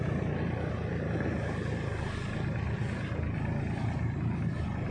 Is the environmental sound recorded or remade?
recorded